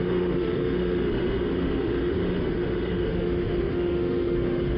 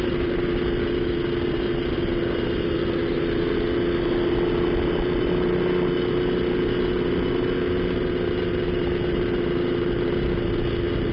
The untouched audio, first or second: second